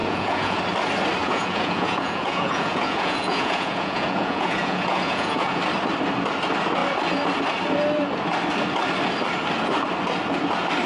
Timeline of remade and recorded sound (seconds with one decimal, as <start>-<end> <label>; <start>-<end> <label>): 0.0-0.6 remade; 0.6-1.2 recorded; 1.2-5.6 remade; 5.6-10.9 recorded